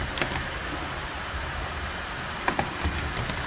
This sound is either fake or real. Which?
real